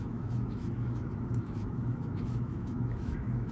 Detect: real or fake fake